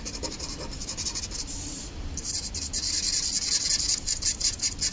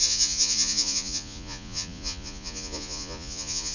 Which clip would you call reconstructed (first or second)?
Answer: second